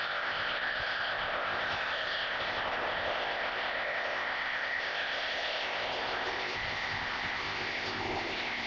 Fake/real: fake